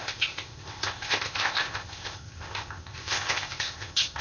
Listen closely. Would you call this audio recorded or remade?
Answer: remade